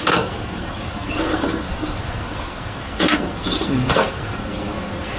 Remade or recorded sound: remade